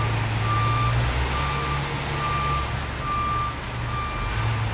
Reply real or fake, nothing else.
real